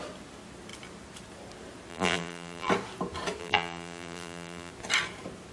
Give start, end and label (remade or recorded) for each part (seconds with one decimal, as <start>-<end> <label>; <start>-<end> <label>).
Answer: 0.0-1.9 recorded; 1.9-2.7 remade; 2.7-3.4 recorded; 3.4-4.7 remade; 4.7-5.5 recorded